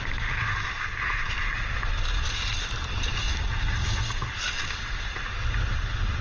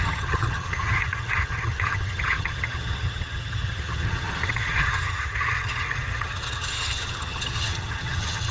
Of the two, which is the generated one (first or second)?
second